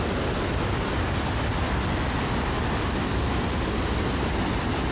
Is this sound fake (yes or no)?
no